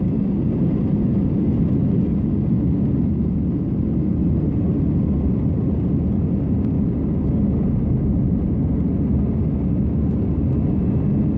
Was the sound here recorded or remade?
recorded